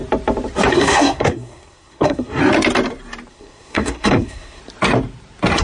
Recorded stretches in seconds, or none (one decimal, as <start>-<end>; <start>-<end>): 0.0-0.7; 2.4-3.3; 4.6-5.6